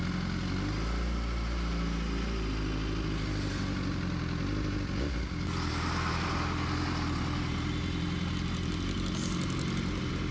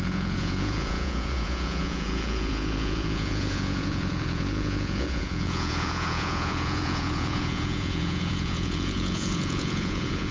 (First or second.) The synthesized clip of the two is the second